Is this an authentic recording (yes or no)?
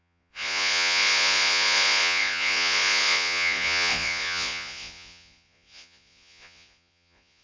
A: no